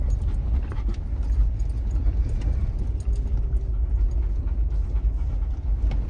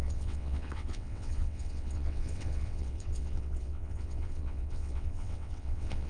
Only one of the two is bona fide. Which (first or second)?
first